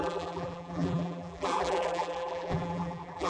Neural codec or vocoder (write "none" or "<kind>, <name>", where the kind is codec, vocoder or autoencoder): vocoder, BigVGAN v2